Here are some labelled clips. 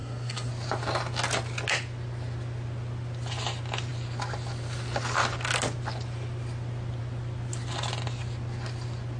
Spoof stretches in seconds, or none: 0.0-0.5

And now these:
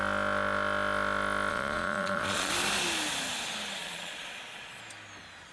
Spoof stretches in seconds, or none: 1.5-2.5; 3.8-4.8

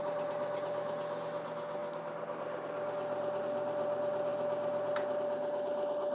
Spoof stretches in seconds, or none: none

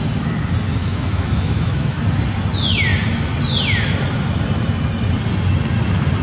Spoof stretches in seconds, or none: 0.8-2.0

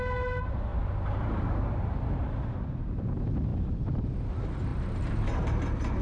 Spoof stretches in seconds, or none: 0.7-2.3; 4.7-6.0